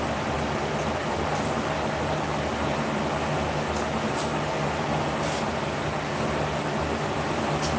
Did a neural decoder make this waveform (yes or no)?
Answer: no